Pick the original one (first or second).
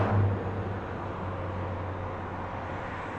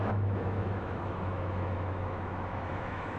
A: first